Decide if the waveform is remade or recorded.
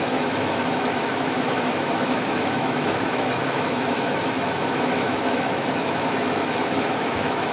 remade